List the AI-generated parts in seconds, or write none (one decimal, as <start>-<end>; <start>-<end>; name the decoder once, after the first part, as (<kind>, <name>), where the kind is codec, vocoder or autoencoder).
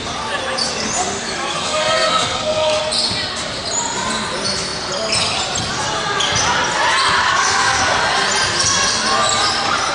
1.5-2.8 (codec, SNAC); 7.2-7.8